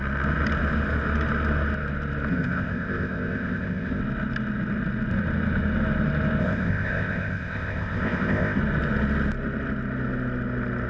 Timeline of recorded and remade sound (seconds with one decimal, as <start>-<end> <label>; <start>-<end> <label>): 0.0-2.3 recorded; 2.3-4.0 remade; 4.0-6.4 recorded; 6.4-8.6 remade; 8.6-10.9 recorded